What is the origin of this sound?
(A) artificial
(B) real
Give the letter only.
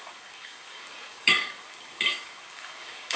A